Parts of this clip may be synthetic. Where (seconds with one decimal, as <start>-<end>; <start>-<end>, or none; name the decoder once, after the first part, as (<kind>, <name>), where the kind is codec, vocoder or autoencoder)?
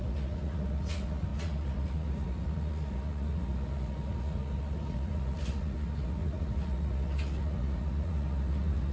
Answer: 0.0-8.9 (vocoder, Vocos)